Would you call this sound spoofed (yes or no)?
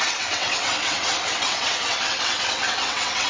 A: yes